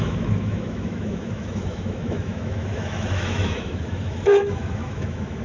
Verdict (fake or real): fake